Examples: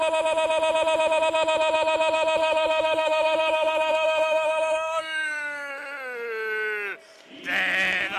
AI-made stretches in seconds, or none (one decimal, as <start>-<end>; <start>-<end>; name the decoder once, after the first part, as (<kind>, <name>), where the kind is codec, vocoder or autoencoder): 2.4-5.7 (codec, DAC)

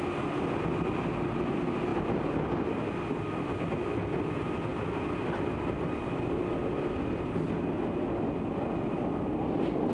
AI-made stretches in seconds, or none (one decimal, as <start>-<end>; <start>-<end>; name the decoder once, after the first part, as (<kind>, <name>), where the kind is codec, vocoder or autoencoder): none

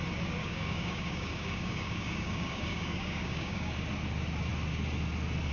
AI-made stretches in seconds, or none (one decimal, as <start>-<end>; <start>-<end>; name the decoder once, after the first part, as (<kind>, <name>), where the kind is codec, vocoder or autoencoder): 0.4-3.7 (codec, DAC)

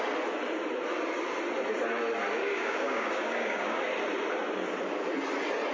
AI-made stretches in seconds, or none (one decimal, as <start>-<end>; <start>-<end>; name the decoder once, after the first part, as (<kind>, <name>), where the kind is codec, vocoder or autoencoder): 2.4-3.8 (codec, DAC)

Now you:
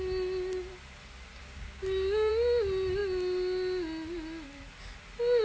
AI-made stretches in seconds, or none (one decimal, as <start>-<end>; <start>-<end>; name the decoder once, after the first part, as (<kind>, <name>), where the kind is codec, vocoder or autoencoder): 1.4-2.3 (codec, DAC)